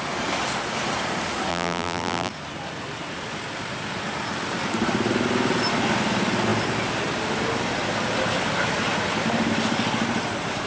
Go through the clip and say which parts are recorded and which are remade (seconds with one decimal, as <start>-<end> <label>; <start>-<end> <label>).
0.0-1.5 recorded; 1.5-2.3 remade; 2.3-10.7 recorded